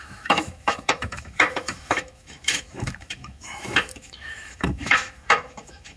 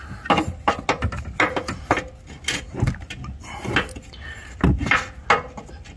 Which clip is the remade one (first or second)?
first